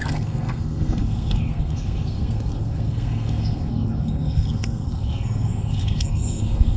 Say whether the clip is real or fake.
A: fake